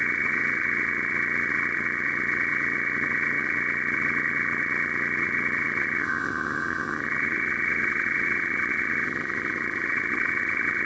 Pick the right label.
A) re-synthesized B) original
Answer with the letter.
A